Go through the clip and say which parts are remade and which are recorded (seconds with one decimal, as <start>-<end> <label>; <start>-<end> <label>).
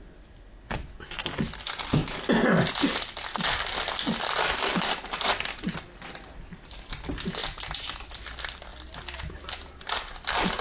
0.0-10.6 recorded